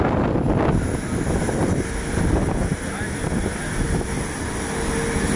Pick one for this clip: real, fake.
real